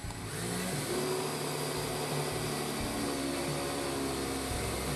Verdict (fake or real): real